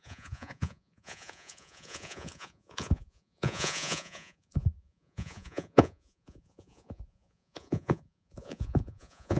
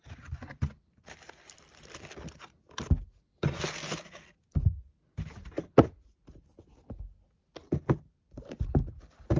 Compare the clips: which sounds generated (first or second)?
first